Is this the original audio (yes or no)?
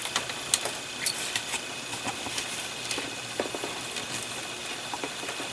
yes